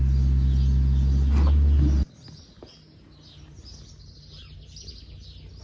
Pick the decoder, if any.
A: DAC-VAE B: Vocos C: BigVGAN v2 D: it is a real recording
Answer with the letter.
D